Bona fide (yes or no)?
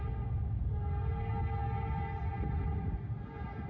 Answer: yes